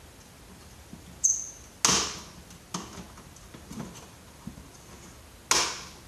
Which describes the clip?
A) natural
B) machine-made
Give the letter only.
A